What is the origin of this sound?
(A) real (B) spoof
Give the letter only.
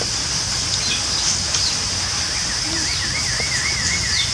A